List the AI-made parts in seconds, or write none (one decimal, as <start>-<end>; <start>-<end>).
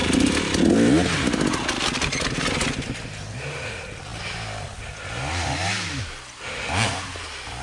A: none